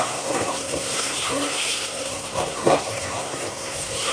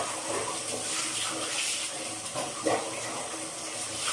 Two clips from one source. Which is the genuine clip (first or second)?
second